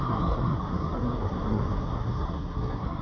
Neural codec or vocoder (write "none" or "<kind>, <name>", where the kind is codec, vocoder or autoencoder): codec, SNAC